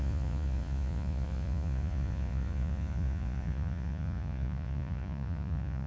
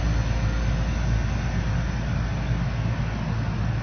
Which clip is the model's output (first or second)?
first